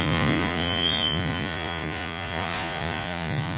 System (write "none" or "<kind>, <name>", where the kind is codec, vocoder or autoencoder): vocoder, Vocos